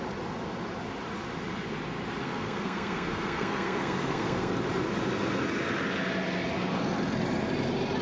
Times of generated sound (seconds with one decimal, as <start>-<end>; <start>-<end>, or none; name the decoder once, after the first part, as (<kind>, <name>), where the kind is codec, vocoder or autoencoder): 2.2-4.5 (codec, SNAC)